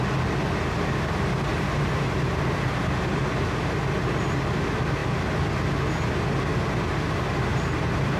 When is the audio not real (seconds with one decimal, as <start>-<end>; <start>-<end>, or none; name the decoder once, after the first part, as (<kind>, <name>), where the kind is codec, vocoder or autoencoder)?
1.5-3.2 (vocoder, BigVGAN v2); 6.5-8.2